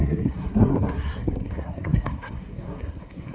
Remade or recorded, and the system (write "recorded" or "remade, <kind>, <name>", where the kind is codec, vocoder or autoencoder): remade, codec, SNAC